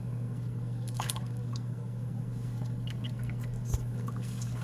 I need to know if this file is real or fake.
fake